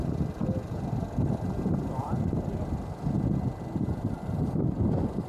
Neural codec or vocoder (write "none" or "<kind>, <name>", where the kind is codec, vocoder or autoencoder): none